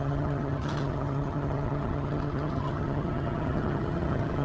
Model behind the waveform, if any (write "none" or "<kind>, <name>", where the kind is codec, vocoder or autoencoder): vocoder, HiFi-GAN